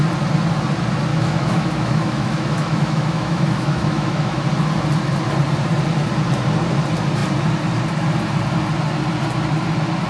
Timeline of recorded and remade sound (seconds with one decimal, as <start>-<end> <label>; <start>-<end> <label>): 0.0-1.1 recorded; 1.1-4.4 remade; 4.4-10.1 recorded